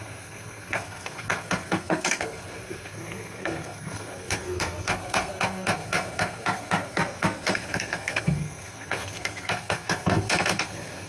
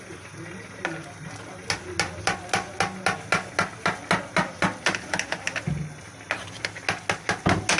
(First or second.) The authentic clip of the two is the second